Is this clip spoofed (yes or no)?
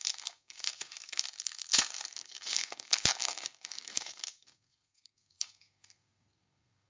yes